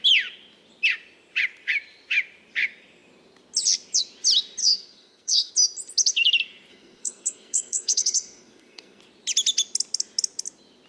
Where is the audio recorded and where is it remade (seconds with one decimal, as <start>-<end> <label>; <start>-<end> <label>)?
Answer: 0.0-4.6 recorded; 4.6-5.5 remade; 5.5-6.7 recorded; 6.7-9.0 remade; 9.0-10.9 recorded